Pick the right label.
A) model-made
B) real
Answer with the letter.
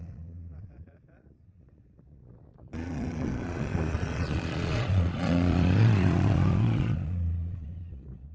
A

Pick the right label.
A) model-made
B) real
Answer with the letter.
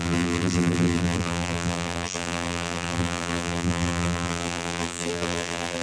A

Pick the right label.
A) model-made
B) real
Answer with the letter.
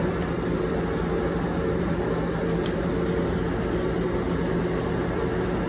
B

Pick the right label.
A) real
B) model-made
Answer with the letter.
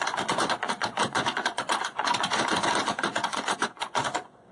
B